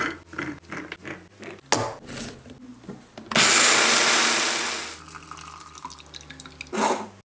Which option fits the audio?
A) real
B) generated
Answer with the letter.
A